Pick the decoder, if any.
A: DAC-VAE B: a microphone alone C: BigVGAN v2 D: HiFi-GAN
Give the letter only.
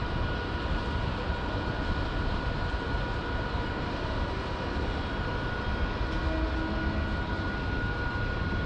B